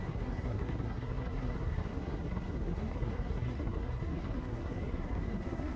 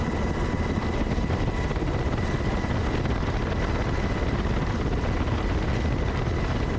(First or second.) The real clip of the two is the second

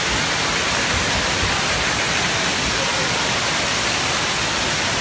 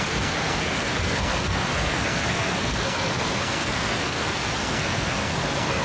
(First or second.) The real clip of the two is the first